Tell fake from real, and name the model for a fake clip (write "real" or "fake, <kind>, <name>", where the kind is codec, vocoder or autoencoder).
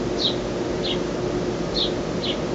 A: real